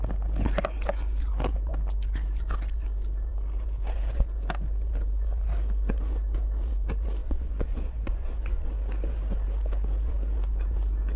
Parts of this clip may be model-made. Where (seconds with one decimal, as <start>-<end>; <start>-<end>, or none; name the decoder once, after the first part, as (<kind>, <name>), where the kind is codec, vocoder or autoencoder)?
7.2-8.7 (vocoder, Vocos)